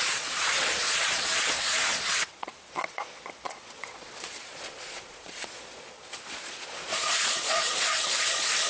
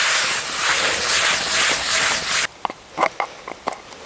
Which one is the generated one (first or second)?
first